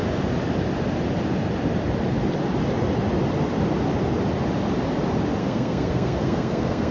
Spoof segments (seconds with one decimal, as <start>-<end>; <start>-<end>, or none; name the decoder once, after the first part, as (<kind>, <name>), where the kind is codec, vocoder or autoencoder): 5.4-6.9 (codec, SNAC)